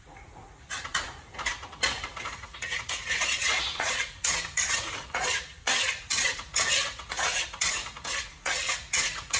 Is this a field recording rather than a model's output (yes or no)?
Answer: no